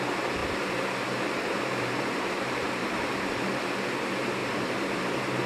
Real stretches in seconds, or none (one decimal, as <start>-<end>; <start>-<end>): 0.0-0.4; 3.5-4.4; 5.0-5.5